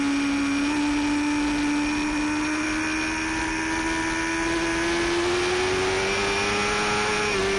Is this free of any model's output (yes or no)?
yes